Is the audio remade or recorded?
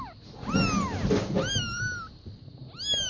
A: recorded